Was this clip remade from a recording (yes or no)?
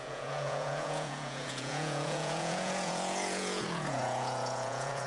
yes